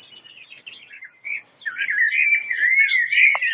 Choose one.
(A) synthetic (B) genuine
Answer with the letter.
B